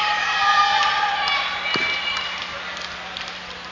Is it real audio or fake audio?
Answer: real